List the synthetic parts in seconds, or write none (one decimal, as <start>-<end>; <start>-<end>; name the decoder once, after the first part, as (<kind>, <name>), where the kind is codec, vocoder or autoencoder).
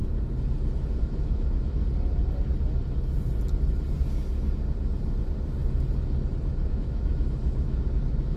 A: 1.0-1.8 (autoencoder, DAC-VAE); 6.7-8.4